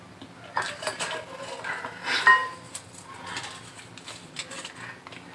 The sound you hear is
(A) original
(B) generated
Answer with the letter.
A